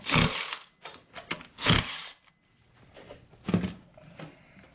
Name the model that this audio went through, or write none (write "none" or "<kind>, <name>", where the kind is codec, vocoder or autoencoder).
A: none